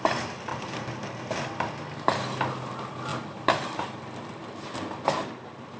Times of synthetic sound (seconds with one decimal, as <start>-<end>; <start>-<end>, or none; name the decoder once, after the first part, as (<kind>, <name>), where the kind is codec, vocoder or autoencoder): 0.0-0.5 (vocoder, BigVGAN v2); 1.5-5.8